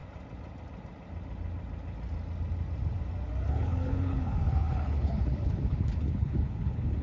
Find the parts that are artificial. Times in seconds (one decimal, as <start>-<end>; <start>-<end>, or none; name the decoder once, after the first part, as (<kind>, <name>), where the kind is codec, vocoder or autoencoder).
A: 3.5-7.0 (codec, HILCodec)